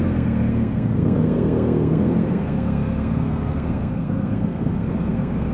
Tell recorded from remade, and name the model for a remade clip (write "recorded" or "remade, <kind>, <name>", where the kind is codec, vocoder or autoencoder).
remade, codec, SNAC